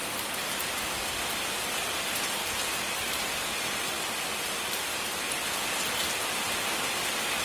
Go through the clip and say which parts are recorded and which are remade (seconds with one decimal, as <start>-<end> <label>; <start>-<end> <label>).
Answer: 0.0-7.4 recorded